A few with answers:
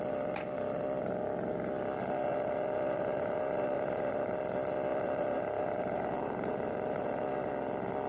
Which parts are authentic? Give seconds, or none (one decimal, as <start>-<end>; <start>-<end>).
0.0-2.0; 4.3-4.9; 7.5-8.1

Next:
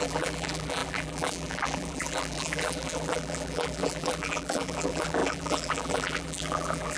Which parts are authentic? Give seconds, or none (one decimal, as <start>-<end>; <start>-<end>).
none

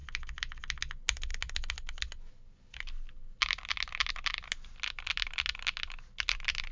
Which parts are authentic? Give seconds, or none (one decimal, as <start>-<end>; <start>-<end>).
0.0-6.7

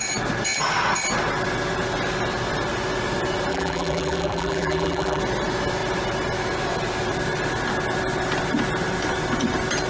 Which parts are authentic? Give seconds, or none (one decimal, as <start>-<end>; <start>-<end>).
0.0-3.5; 5.2-9.9

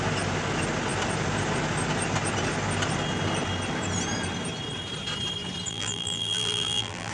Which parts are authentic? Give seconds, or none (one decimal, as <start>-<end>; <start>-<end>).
0.0-5.7

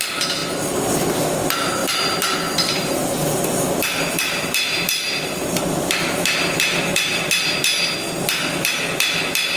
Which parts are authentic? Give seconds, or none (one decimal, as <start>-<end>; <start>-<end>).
0.0-1.8; 5.6-9.6

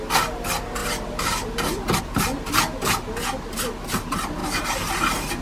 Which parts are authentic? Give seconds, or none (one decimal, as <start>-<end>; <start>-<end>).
0.0-0.8; 2.0-4.4